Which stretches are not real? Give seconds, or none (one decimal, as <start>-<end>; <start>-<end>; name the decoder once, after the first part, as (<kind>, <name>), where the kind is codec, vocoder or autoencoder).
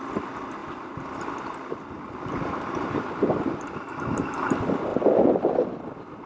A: 0.6-3.6 (vocoder, BigVGAN v2); 4.9-5.8